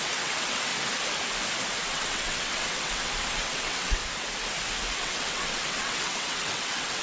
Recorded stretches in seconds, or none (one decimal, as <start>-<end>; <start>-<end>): 0.7-1.9; 4.0-4.9